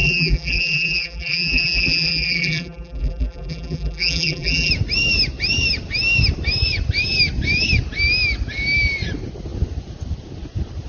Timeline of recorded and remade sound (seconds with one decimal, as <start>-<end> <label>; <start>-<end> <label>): 0.0-4.7 remade; 4.7-10.9 recorded